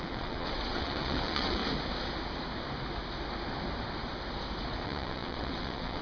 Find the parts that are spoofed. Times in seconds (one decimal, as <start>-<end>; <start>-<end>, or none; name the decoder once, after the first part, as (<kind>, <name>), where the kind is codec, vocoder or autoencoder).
0.0-1.6 (vocoder, WaveNeXt); 4.8-6.0